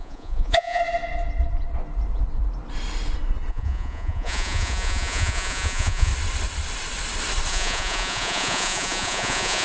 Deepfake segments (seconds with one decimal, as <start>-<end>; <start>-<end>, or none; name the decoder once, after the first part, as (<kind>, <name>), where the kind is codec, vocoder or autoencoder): 0.0-0.8 (vocoder, Vocos); 3.5-6.1; 7.5-9.6